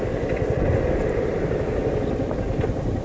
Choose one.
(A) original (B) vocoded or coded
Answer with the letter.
A